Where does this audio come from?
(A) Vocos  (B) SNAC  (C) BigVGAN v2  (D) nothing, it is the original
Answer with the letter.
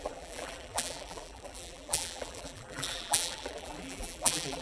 C